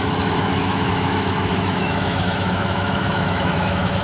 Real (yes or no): no